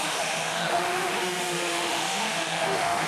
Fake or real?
fake